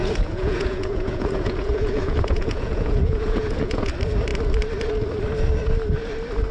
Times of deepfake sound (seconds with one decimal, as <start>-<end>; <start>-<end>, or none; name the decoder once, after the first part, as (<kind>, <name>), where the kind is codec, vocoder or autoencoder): 0.0-3.9 (vocoder, Vocos)